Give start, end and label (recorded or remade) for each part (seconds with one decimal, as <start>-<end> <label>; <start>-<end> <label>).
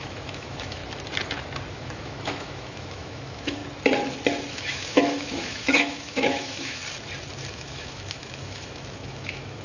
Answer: 0.0-0.8 remade; 0.8-1.7 recorded; 1.7-3.6 remade; 3.6-4.5 recorded; 4.5-6.8 remade; 6.8-7.5 recorded; 7.5-9.6 remade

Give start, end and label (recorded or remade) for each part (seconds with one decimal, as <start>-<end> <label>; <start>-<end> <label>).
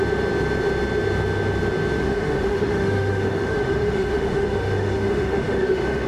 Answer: 0.0-2.0 recorded; 2.0-6.1 remade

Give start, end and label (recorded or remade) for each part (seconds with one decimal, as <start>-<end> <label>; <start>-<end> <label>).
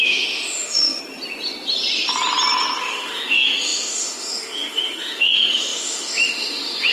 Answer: 0.0-1.0 remade; 1.0-2.8 recorded; 2.8-6.9 remade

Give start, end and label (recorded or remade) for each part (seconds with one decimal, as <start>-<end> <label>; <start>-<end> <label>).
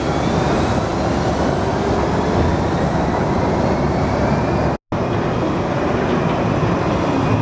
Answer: 0.0-7.4 recorded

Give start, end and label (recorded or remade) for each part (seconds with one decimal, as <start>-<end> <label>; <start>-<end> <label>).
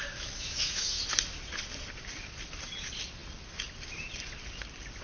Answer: 0.0-1.0 remade; 1.0-5.0 recorded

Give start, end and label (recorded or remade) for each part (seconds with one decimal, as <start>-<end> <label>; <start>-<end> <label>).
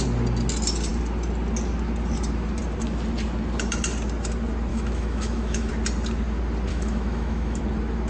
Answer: 0.0-4.7 recorded; 4.7-5.7 remade; 5.7-6.7 recorded; 6.7-7.6 remade; 7.6-8.1 recorded